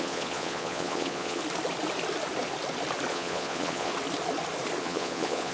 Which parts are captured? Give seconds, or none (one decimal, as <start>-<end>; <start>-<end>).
1.4-3.1; 3.9-4.8

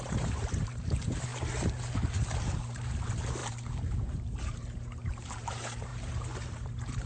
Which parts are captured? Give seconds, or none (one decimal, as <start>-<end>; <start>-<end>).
1.3-2.4

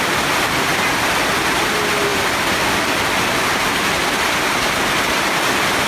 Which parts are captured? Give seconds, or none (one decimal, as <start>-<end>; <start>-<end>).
0.0-0.7; 1.7-5.9

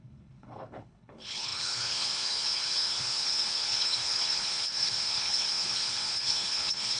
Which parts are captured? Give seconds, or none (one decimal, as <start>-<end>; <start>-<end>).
none

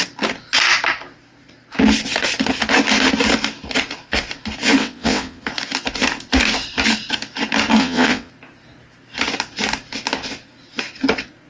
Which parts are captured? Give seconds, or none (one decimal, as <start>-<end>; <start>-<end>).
0.0-4.8; 5.4-7.8; 8.3-11.5

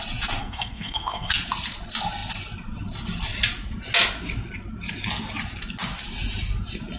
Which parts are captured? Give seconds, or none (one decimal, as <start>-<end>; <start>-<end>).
0.0-0.4; 1.3-7.0

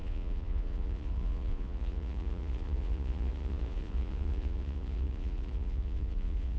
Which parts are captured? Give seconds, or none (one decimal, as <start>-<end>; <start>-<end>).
none